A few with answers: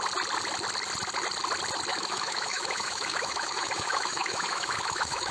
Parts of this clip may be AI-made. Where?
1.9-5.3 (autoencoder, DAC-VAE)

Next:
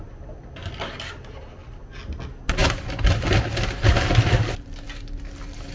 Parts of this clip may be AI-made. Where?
none